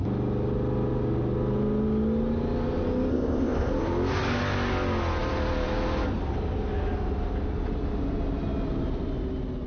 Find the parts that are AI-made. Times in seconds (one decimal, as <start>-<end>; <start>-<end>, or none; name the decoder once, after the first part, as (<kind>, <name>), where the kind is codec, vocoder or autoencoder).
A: 3.1-3.7 (codec, ZipCodec)